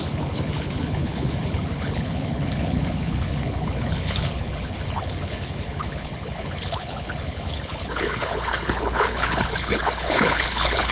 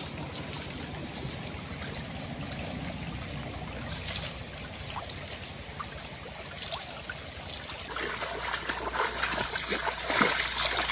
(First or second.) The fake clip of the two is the first